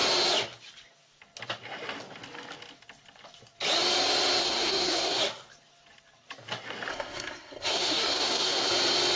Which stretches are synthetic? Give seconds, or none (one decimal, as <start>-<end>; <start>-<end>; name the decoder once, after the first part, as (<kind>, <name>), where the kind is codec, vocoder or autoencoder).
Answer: 4.4-5.2 (codec, SNAC); 6.9-8.7